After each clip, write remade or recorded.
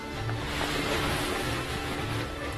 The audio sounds recorded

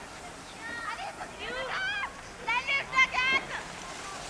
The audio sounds recorded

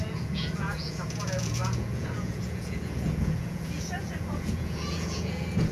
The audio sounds remade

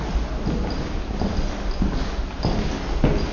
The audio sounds recorded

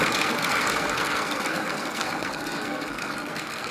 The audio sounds remade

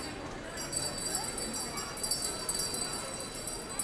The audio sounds recorded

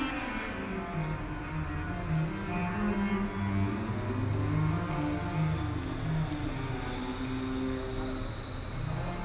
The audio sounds recorded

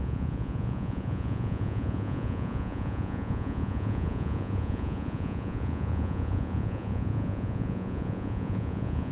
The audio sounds remade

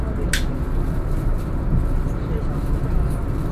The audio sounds recorded